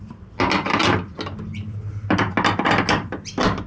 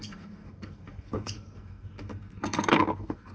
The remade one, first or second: second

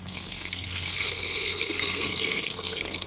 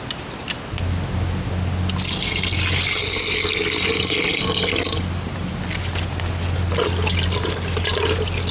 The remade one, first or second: first